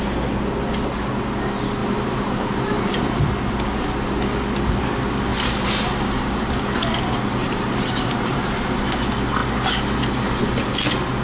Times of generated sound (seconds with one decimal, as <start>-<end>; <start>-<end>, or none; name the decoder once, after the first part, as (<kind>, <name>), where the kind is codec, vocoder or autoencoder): 1.8-3.2 (vocoder, BigVGAN v2); 5.3-6.9; 7.4-8.5